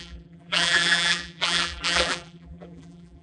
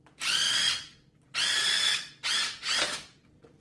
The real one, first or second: second